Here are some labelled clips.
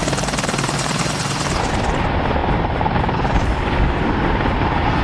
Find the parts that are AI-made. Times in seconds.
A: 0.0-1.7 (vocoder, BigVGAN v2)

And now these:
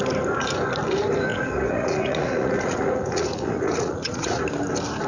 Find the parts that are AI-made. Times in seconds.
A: 1.3-4.4 (vocoder, Vocos)

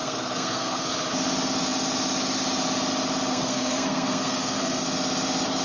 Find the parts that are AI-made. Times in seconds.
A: 0.0-0.9 (codec, SNAC); 3.3-4.8